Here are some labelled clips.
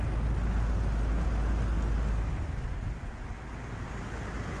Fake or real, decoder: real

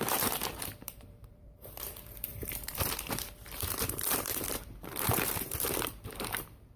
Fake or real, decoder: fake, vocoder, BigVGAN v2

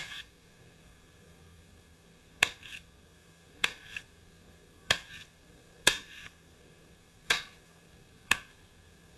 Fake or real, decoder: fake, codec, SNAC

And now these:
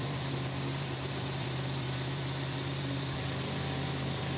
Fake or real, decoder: fake, vocoder, BigVGAN v2